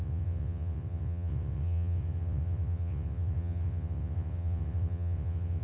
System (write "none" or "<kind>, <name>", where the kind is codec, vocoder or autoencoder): vocoder, WaveNeXt